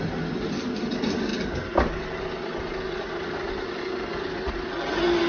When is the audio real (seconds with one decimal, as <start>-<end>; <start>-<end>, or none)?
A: 0.0-5.3